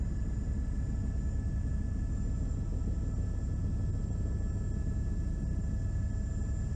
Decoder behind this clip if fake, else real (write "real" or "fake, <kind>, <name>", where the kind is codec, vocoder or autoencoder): real